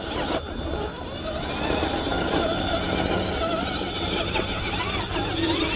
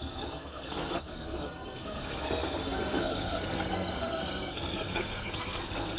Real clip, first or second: first